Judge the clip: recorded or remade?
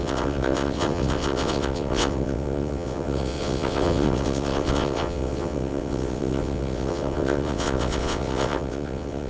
remade